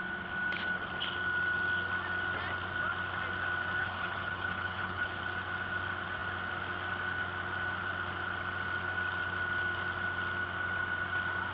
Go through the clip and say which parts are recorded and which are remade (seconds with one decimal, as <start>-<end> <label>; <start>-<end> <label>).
0.0-3.8 recorded; 3.8-5.2 remade; 5.2-11.5 recorded